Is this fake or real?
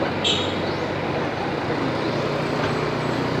real